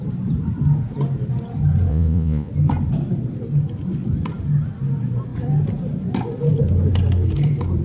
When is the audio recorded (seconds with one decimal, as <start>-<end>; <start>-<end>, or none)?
0.0-1.9; 2.5-7.8